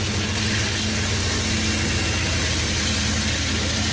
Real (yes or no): yes